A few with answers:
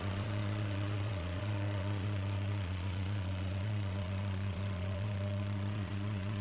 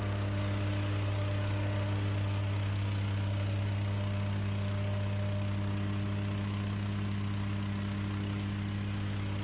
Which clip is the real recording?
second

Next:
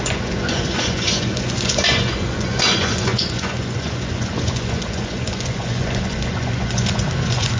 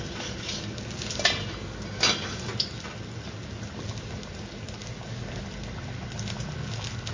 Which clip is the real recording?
second